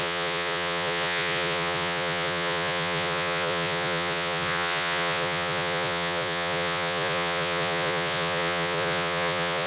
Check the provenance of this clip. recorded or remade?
remade